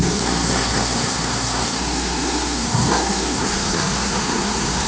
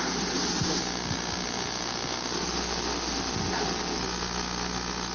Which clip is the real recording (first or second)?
second